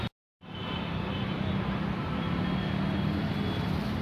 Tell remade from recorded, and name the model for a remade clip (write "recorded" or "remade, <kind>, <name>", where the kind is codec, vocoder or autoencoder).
recorded